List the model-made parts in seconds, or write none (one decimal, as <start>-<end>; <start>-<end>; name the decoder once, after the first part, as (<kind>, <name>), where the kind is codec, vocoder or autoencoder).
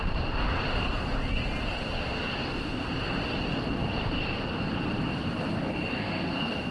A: 5.8-6.7 (codec, SNAC)